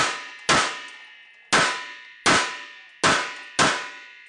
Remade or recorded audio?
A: recorded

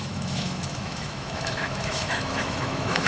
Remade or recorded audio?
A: remade